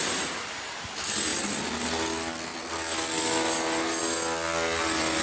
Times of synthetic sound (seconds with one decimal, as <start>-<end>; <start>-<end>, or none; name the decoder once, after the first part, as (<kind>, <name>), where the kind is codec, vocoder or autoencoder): none